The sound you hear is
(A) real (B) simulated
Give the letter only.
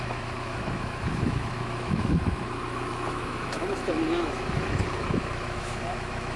B